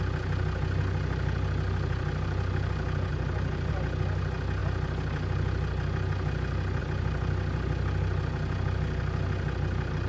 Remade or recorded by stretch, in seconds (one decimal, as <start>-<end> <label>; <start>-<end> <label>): 0.0-3.1 recorded; 3.1-3.7 remade; 3.7-10.1 recorded

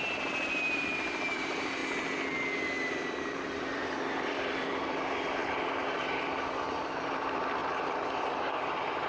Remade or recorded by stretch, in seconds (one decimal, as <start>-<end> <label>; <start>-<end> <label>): 0.0-1.8 remade; 1.8-2.9 recorded; 2.9-9.1 remade

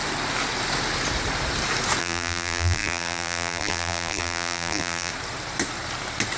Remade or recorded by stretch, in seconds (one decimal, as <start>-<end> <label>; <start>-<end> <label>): 0.0-2.0 recorded; 2.0-5.1 remade; 5.1-6.4 recorded

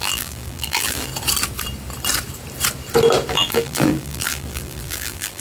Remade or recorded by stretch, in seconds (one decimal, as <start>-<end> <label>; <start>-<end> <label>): 0.0-1.1 remade; 1.1-3.3 recorded; 3.3-5.4 remade

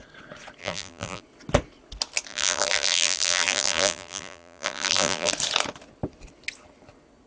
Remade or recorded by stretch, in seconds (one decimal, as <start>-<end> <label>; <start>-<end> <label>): 0.0-0.6 recorded; 0.6-1.2 remade; 1.2-2.3 recorded; 2.3-5.3 remade; 5.3-7.3 recorded